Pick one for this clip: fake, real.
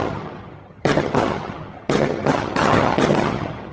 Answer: fake